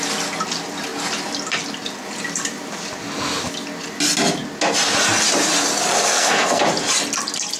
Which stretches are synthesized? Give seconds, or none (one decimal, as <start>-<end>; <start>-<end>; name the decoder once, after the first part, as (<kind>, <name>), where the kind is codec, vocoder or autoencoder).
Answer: 5.9-6.6 (codec, SNAC)